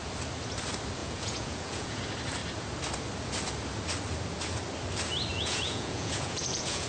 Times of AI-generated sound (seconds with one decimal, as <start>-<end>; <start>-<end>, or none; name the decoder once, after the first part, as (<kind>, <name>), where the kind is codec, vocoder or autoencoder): 1.0-2.0 (vocoder, Vocos); 5.3-6.9